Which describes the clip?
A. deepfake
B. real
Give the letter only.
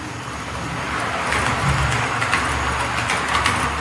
B